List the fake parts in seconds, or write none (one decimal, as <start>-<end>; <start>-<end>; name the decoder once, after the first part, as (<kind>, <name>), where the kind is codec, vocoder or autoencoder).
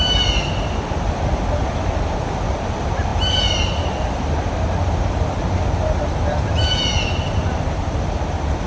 none